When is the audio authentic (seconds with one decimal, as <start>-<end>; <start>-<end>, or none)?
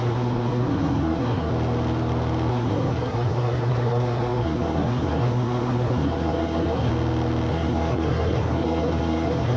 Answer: 1.5-2.5; 6.9-7.5